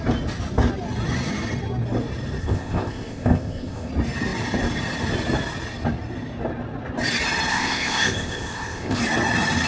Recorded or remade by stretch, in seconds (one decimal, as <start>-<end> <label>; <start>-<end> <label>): 0.0-2.4 recorded; 2.4-3.9 remade; 3.9-7.5 recorded; 7.5-9.0 remade; 9.0-9.7 recorded